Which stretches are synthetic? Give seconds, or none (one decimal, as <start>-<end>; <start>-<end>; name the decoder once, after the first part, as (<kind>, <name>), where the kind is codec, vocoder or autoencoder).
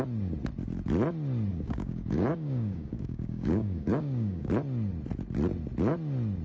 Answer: 1.5-4.5 (codec, DAC)